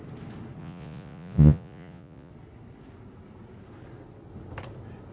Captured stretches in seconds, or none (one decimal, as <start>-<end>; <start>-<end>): 0.0-0.6; 2.3-5.1